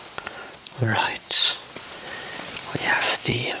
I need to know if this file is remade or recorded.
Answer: remade